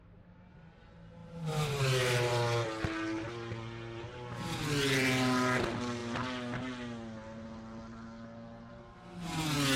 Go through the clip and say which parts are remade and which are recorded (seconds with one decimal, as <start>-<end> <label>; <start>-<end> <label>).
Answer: 0.0-9.8 recorded